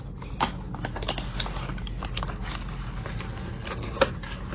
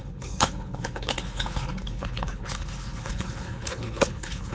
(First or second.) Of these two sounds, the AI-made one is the second